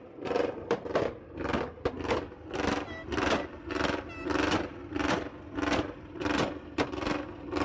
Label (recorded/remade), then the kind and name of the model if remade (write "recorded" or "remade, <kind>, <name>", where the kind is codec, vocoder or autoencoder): remade, vocoder, BigVGAN v2